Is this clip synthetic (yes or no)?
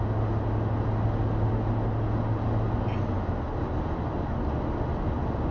no